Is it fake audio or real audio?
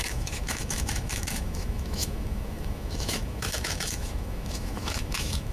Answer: fake